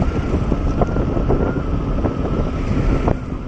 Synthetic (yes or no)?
no